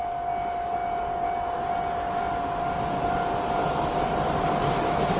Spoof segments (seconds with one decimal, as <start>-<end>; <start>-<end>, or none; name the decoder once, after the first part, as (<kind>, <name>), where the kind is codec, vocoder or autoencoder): none